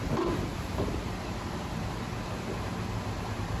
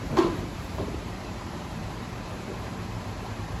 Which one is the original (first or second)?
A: first